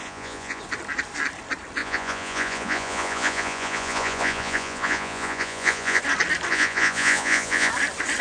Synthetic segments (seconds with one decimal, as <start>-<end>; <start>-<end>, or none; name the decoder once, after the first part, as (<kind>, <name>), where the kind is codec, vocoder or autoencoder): 0.0-0.6 (vocoder, Vocos); 1.8-6.0; 6.5-7.7